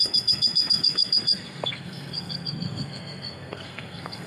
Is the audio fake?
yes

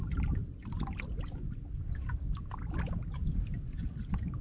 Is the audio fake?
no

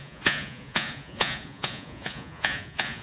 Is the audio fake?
yes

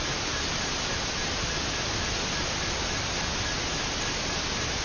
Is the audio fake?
no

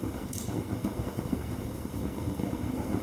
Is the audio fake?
yes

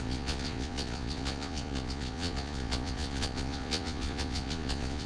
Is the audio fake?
yes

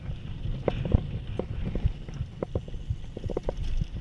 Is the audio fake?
no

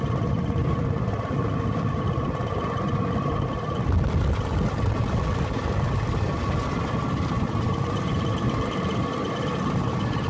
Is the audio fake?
no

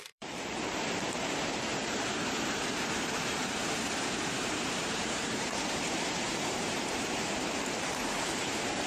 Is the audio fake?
yes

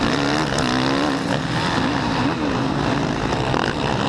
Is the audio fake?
no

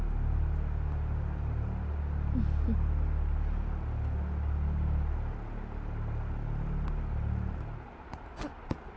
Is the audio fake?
no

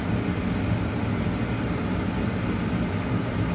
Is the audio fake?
no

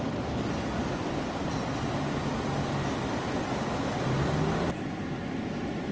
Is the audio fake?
no